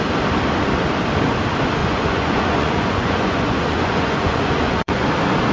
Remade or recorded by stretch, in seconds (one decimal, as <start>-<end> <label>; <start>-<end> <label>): 0.0-1.8 recorded; 1.8-5.1 remade; 5.1-5.5 recorded